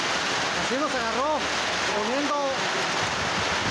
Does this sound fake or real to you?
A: real